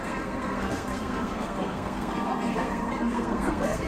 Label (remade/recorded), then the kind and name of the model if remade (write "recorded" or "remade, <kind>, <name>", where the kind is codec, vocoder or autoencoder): remade, codec, SNAC